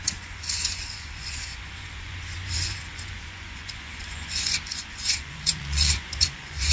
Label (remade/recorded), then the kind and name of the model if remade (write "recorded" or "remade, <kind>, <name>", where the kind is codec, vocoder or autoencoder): remade, vocoder, Vocos